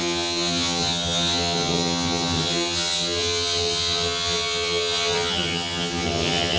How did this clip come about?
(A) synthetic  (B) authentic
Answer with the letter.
A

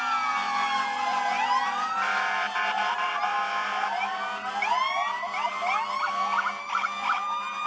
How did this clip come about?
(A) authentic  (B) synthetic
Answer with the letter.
A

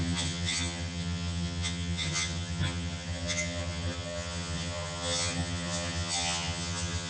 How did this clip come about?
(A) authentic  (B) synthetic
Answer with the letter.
B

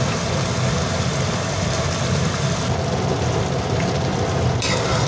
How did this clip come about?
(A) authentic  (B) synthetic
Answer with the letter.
A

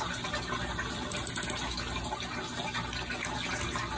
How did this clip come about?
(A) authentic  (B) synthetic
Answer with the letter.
A